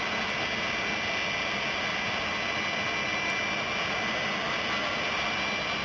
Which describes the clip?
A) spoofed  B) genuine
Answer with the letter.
B